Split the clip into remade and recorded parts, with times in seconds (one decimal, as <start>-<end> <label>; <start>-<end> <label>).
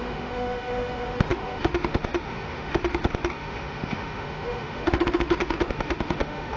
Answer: 0.0-6.6 remade